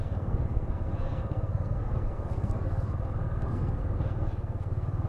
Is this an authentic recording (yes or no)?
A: no